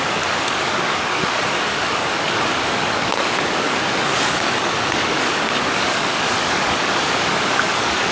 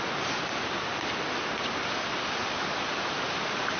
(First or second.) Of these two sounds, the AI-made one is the first